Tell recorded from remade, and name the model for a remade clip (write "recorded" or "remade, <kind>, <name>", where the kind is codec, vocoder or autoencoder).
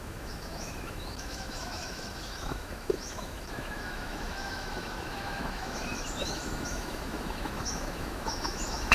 remade, autoencoder, DAC-VAE